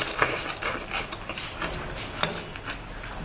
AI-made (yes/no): no